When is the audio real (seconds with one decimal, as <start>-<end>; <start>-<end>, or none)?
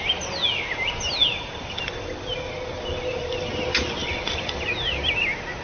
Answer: 0.0-1.2; 3.5-4.0; 4.7-5.6